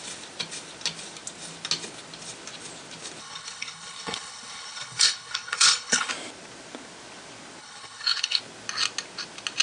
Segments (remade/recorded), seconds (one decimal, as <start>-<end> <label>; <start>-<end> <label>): 0.0-3.2 recorded; 3.2-6.1 remade; 6.1-7.6 recorded; 7.6-8.4 remade; 8.4-9.6 recorded